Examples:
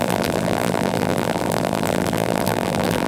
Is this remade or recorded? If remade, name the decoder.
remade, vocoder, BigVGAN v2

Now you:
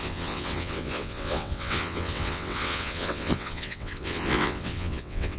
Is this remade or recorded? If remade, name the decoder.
remade, vocoder, WaveNeXt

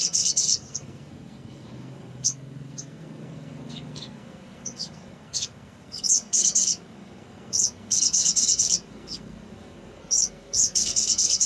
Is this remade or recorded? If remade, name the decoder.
remade, codec, SNAC